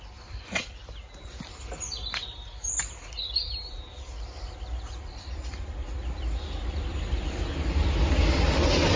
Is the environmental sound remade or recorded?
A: recorded